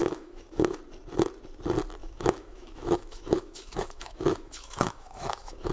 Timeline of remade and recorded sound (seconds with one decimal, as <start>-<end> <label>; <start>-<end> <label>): 0.0-0.8 remade; 0.8-2.0 recorded; 2.0-5.7 remade